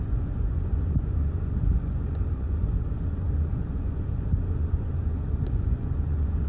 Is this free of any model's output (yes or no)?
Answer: no